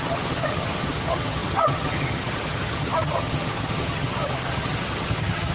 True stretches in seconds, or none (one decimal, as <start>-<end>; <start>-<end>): none